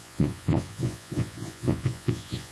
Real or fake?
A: fake